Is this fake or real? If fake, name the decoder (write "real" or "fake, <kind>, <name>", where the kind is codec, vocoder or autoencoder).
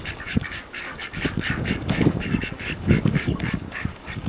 fake, codec, DAC